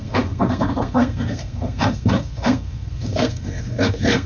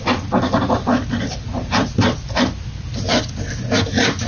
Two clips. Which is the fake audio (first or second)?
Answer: first